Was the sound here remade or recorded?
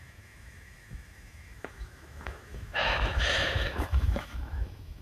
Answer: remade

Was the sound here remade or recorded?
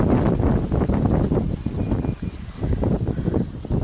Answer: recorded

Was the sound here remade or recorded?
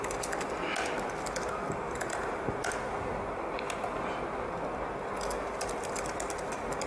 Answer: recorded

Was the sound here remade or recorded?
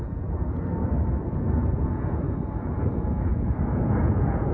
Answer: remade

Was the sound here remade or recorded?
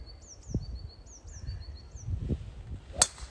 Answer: recorded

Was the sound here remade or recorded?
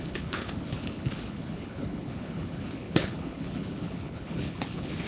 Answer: remade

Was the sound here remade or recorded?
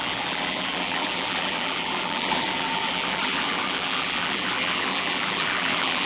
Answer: remade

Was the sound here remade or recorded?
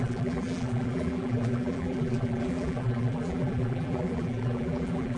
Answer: remade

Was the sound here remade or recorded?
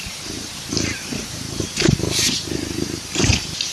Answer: remade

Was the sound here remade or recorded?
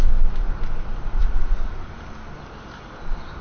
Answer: recorded